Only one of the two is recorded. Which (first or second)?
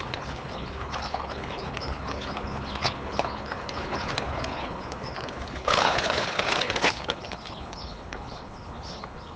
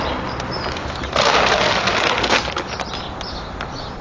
second